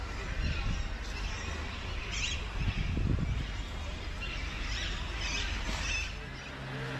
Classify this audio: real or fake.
real